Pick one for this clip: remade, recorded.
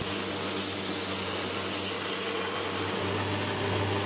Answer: recorded